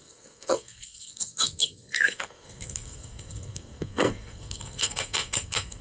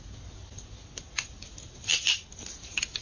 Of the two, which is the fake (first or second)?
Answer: first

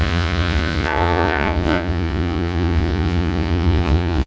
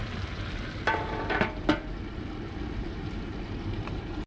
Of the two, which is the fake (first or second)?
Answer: first